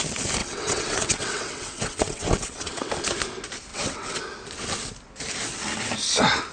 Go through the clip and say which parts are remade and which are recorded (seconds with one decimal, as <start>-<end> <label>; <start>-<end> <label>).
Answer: 0.0-0.4 recorded; 0.4-2.9 remade; 2.9-3.7 recorded; 3.7-4.2 remade; 4.2-6.5 recorded